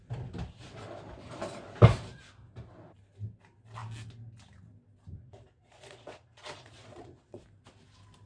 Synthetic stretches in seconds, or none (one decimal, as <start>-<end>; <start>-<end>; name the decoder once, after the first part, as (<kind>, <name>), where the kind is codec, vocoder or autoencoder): 5.2-7.4 (vocoder, Vocos)